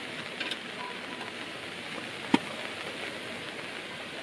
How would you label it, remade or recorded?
recorded